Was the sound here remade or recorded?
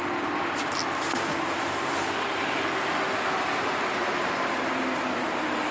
recorded